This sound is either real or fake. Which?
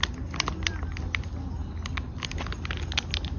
real